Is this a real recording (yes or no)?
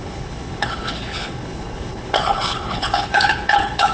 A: no